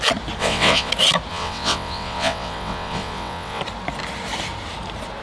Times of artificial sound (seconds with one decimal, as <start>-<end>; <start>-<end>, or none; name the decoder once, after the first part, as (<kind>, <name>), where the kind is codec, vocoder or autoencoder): 0.4-0.9 (vocoder, WaveNeXt); 1.3-3.6